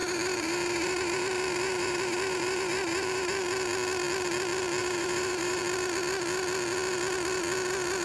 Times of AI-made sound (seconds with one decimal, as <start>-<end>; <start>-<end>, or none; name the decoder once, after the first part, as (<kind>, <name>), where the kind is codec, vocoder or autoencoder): 0.0-3.4 (vocoder, BigVGAN v2); 4.8-5.6